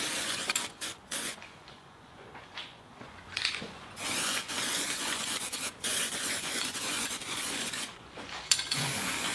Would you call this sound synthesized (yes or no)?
yes